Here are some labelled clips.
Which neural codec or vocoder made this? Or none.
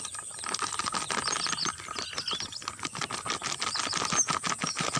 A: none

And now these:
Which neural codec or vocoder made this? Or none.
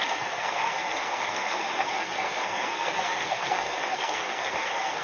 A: codec, SNAC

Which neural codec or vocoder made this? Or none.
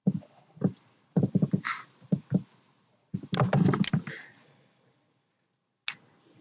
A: none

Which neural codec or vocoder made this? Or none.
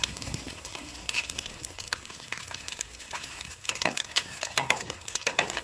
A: codec, SNAC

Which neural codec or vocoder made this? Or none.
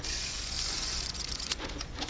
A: vocoder, Vocos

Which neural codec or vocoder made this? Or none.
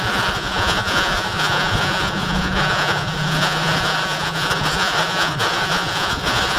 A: vocoder, Vocos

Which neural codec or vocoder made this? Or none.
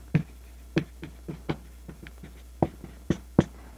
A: none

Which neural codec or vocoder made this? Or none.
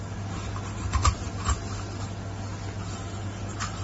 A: none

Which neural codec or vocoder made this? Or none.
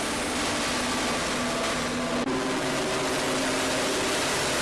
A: none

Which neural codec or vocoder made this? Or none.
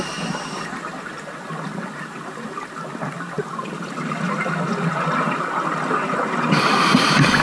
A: none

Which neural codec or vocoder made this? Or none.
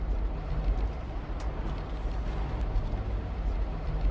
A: none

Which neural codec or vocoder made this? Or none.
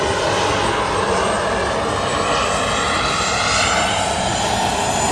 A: none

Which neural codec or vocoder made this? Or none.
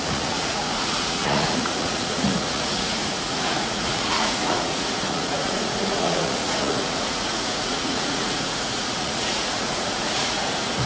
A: vocoder, Vocos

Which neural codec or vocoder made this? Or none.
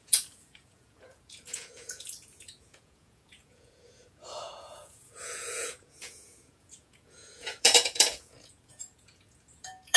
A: vocoder, Vocos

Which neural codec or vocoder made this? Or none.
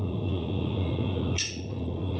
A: vocoder, Vocos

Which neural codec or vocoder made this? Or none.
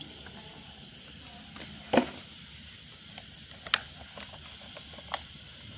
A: none